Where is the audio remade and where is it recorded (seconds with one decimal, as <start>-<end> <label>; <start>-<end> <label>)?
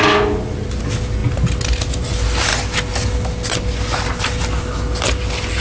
0.0-5.6 recorded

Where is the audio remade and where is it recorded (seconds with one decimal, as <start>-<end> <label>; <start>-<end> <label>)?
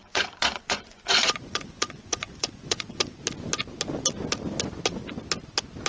0.0-3.2 remade; 3.2-5.9 recorded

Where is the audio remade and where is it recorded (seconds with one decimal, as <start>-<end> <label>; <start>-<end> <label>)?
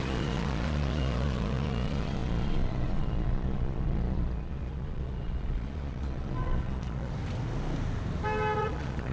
0.0-7.1 remade; 7.1-8.6 recorded; 8.6-9.1 remade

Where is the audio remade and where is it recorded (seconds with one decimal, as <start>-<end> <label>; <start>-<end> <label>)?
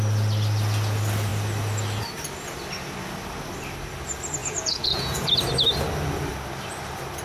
0.0-4.4 recorded; 4.4-5.3 remade; 5.3-7.2 recorded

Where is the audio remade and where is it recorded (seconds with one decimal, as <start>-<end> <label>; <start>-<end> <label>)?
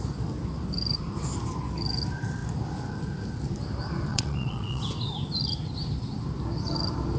0.0-4.1 recorded; 4.1-4.8 remade; 4.8-7.2 recorded